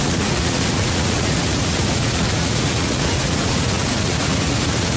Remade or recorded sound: remade